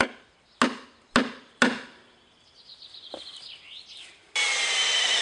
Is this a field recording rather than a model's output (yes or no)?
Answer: yes